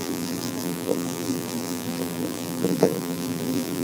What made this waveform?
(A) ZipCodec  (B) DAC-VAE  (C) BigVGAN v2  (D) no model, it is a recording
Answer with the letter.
C